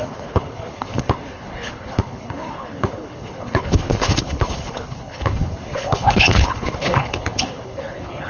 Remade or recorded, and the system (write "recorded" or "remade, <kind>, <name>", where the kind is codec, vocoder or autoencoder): remade, codec, HILCodec